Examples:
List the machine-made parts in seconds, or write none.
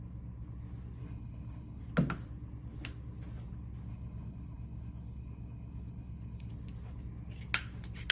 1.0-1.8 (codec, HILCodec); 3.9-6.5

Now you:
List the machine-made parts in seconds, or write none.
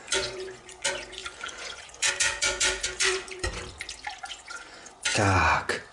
0.0-3.6 (vocoder, Vocos); 4.2-5.1